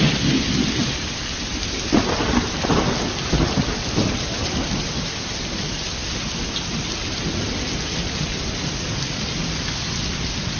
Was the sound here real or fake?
real